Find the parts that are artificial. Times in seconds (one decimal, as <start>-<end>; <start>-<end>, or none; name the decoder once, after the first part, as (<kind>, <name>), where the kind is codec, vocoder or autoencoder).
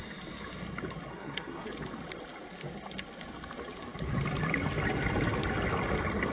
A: 1.1-1.7 (codec, SNAC)